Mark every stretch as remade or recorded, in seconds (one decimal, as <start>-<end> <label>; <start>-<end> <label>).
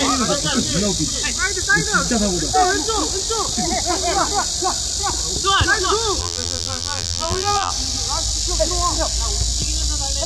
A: 0.0-6.2 recorded; 6.2-7.7 remade; 7.7-10.3 recorded